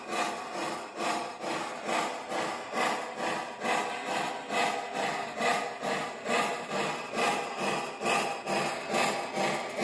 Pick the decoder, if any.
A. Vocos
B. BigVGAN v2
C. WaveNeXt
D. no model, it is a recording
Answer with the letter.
D